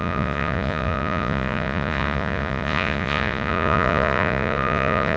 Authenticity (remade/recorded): remade